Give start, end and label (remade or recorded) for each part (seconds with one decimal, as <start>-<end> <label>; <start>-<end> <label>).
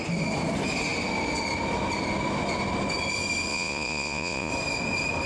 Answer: 0.0-3.5 recorded; 3.5-4.5 remade; 4.5-5.3 recorded